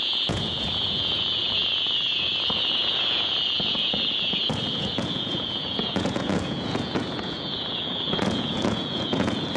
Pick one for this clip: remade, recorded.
remade